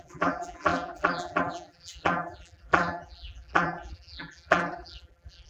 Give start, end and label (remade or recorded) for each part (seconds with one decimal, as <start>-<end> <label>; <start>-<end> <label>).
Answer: 0.0-5.5 remade